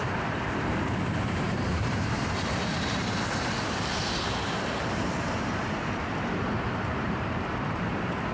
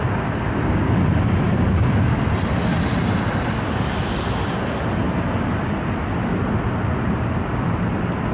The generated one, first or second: first